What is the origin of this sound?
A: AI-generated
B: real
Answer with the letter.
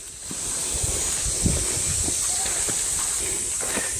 B